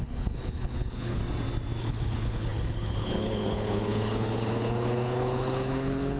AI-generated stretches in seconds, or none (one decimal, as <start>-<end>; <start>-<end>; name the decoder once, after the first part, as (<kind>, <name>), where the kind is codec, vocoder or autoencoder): 0.0-1.2 (codec, HILCodec); 1.8-6.2